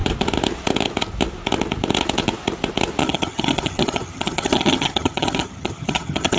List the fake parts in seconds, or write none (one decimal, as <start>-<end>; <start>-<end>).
3.0-6.4